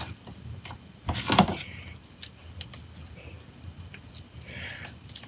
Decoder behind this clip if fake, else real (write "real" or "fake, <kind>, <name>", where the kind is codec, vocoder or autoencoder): real